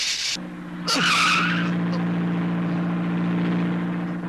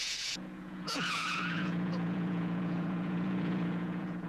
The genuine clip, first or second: first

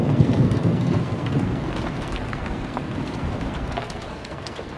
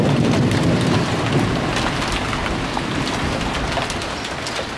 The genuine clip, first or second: second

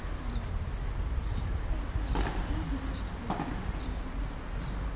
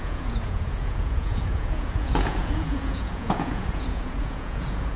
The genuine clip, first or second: first